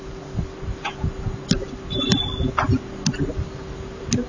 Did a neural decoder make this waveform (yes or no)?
no